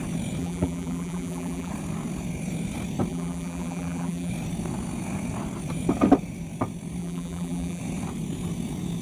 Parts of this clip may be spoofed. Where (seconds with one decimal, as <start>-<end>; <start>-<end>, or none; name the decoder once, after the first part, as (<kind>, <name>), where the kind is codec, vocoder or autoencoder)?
0.4-1.7 (vocoder, BigVGAN v2); 3.1-4.3; 7.0-7.8